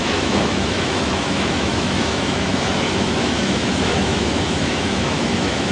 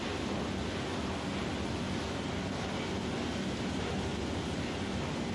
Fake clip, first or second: first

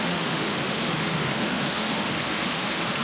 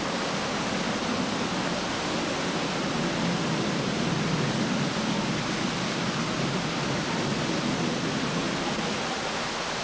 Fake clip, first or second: first